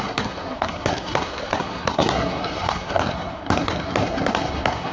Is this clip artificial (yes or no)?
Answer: yes